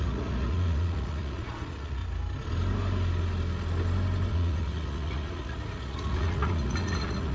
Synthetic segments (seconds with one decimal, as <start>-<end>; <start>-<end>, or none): 0.0-2.0; 4.3-7.3